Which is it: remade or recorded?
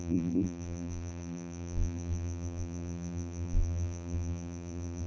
remade